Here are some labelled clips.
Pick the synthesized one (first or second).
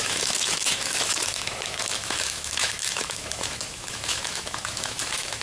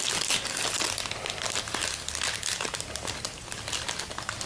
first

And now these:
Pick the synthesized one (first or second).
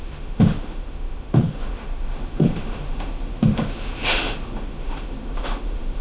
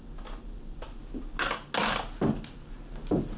first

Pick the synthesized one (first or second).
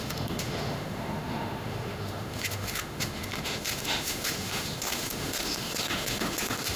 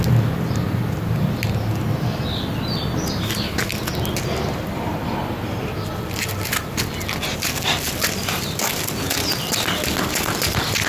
first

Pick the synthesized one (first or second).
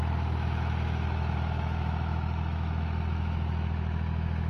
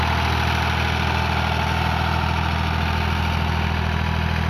first